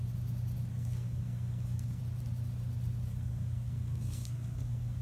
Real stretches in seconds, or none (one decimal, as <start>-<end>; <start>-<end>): 0.0-0.7; 2.0-3.1